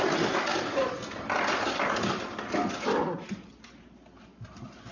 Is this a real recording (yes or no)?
yes